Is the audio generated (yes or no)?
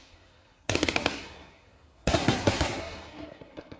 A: yes